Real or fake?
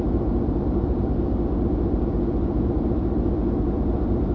real